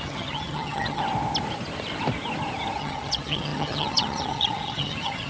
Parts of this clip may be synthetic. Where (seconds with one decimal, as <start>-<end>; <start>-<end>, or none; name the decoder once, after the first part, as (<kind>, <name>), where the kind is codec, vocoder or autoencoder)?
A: 0.0-1.0 (vocoder, HiFi-GAN); 2.8-5.3